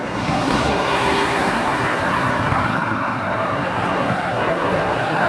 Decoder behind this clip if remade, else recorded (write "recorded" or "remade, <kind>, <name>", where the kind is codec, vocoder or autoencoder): remade, codec, SNAC